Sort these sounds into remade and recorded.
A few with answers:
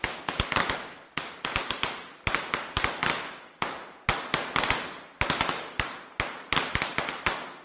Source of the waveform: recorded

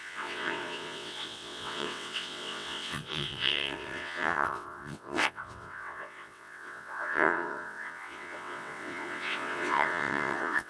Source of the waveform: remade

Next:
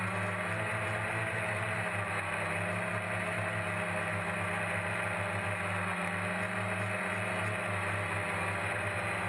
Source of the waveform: recorded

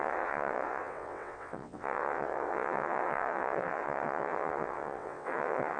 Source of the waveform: remade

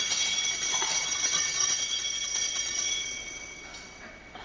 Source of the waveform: remade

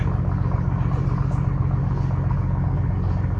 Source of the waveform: recorded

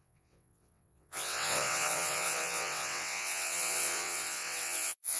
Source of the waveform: remade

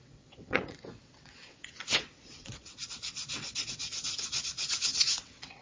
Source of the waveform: remade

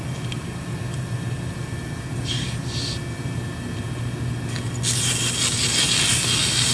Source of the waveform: recorded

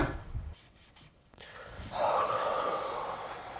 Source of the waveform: remade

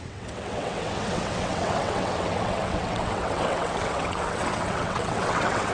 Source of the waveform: remade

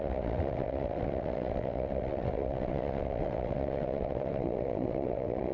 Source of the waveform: remade